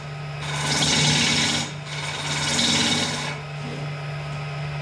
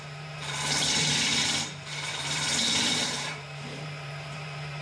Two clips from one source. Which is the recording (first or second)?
first